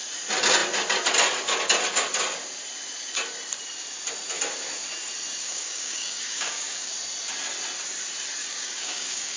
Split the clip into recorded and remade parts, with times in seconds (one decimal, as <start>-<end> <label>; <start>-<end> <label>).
0.0-5.4 recorded; 5.4-6.9 remade; 6.9-8.4 recorded; 8.4-9.4 remade